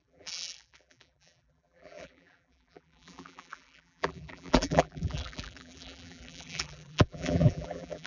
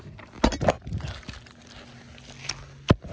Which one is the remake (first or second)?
first